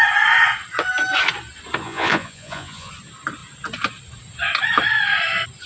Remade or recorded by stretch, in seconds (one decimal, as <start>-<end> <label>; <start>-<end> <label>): 0.0-1.8 recorded; 1.8-2.9 remade; 2.9-5.7 recorded